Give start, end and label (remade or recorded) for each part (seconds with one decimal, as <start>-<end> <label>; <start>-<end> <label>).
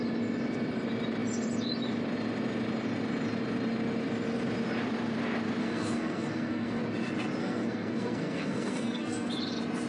0.0-5.6 recorded; 5.6-6.8 remade; 6.8-7.4 recorded; 7.4-9.3 remade; 9.3-9.9 recorded